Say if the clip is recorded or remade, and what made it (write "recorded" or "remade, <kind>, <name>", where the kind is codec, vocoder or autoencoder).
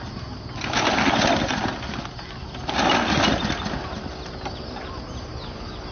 recorded